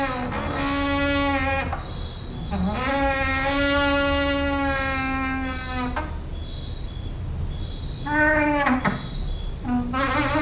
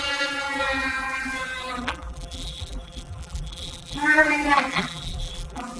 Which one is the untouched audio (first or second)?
first